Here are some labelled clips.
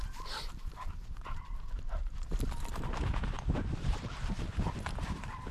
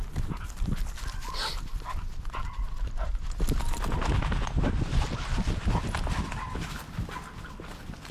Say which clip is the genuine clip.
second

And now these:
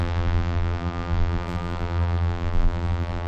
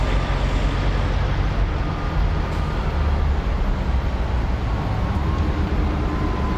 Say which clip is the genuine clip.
second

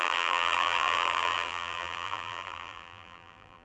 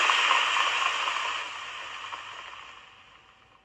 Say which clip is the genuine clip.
second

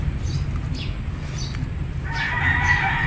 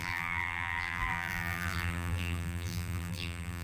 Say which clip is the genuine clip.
first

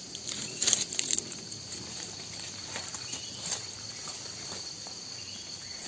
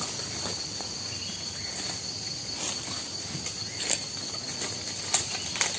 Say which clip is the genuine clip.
second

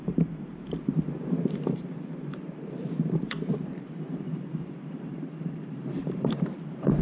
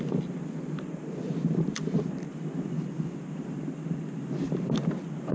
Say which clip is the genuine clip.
second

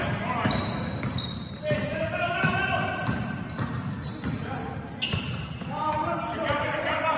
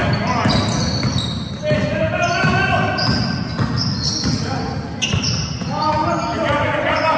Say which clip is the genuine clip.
second